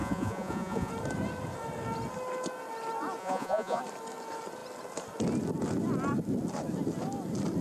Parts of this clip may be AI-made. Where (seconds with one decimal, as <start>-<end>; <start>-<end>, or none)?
0.0-0.9; 3.2-3.8